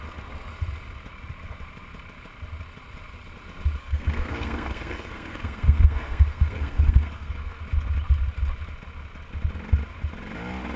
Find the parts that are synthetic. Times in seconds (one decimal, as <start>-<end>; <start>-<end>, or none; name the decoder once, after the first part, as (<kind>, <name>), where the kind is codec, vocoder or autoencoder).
3.8-7.6 (codec, SNAC)